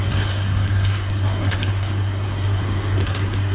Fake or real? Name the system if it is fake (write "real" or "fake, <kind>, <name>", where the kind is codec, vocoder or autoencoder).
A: fake, codec, SNAC